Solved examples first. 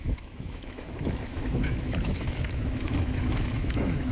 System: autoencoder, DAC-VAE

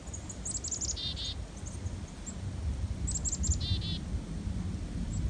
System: none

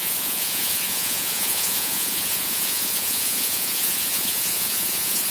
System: vocoder, Vocos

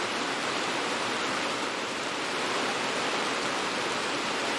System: vocoder, BigVGAN v2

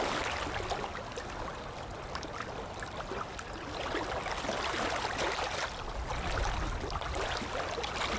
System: none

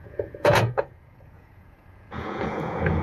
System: vocoder, Vocos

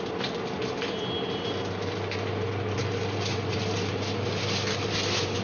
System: none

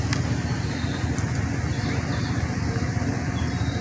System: none